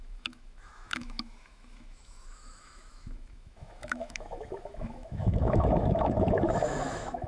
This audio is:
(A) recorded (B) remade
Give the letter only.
B